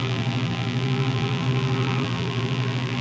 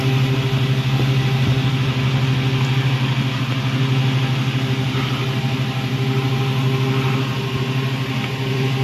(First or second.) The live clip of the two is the second